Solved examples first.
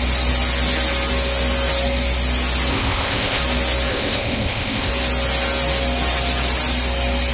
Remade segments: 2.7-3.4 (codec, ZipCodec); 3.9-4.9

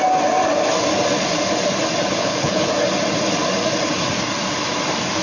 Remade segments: 2.1-2.7 (codec, HILCodec)